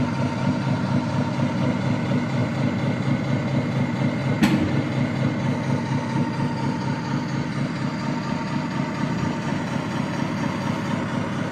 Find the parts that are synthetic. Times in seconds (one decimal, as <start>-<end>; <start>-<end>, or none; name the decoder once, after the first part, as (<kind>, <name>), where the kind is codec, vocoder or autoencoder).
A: 2.4-3.2 (vocoder, BigVGAN v2)